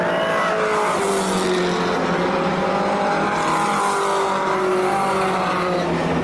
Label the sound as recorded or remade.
recorded